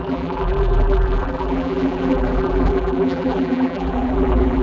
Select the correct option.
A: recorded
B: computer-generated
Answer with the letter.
B